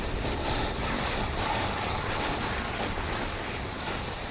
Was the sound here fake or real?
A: real